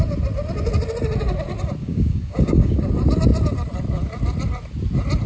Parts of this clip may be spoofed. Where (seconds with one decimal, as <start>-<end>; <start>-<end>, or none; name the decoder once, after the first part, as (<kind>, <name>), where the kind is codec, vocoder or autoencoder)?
1.8-2.8 (codec, DAC)